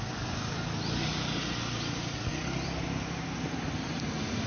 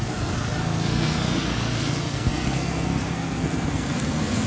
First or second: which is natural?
first